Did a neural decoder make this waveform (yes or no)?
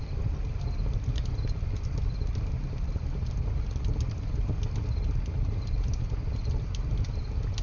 no